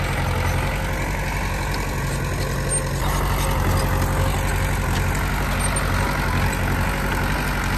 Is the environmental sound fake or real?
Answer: real